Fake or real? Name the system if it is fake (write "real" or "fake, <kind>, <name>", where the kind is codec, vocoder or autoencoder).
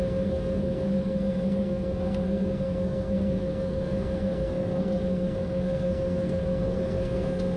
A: fake, codec, SNAC